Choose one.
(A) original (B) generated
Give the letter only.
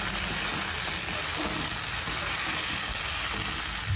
A